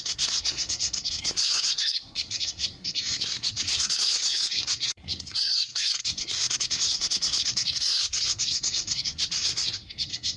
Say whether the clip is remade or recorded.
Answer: remade